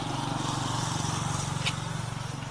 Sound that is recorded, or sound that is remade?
recorded